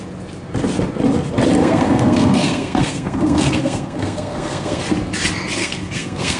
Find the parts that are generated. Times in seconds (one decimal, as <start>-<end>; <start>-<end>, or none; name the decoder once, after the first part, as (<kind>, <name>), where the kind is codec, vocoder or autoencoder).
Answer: 1.6-4.8 (codec, SNAC); 5.6-6.4